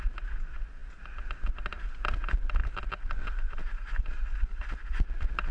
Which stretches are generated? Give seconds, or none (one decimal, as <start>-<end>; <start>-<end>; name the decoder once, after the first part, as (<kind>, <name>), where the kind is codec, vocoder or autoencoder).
none